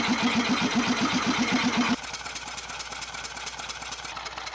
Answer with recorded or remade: recorded